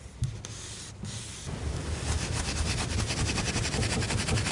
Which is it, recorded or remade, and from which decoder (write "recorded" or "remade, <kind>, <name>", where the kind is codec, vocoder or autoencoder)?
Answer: recorded